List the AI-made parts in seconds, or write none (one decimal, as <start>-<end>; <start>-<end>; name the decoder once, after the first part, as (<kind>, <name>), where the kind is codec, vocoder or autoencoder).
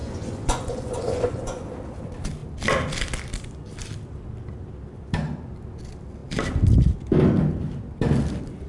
0.0-1.7 (vocoder, Vocos)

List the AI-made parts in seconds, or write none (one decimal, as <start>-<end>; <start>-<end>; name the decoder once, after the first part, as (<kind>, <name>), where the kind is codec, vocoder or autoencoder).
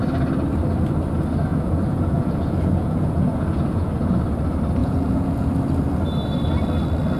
1.5-3.9 (vocoder, Vocos); 4.8-5.5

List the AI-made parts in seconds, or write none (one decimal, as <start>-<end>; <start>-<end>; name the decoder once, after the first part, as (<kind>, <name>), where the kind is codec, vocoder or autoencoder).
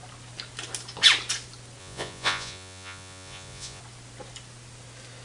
1.8-3.8 (vocoder, Vocos)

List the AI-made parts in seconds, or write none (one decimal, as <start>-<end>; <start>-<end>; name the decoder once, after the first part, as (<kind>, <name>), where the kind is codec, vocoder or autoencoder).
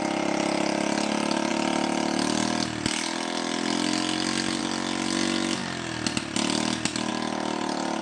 none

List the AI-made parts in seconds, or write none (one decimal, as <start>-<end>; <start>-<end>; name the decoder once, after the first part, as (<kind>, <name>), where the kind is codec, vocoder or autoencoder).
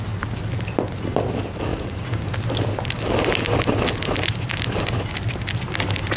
1.7-2.3 (vocoder, Vocos)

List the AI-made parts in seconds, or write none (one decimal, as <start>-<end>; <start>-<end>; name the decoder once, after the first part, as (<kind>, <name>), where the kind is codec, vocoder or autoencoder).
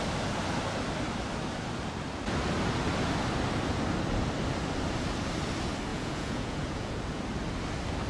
5.9-7.2 (vocoder, Vocos)